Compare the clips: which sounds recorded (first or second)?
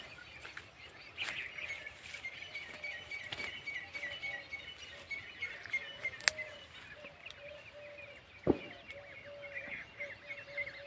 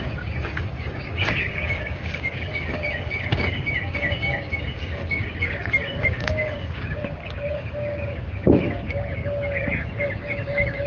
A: first